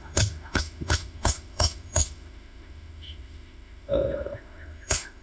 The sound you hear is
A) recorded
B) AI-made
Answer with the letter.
B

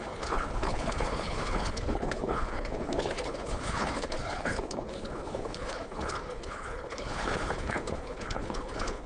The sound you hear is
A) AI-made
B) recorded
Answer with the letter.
A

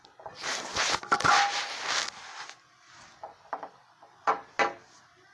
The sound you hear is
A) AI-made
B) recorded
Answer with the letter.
B